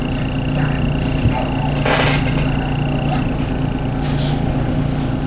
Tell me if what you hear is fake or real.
real